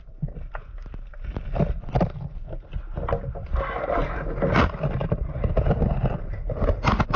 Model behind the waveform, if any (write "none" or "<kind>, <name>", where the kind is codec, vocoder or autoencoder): none